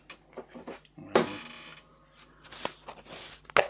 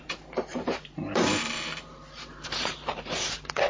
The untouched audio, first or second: first